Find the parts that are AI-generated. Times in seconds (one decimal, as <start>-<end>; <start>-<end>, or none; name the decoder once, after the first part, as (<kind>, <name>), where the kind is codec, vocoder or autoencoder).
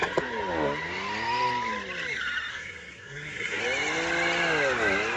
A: 2.5-3.6 (codec, SNAC)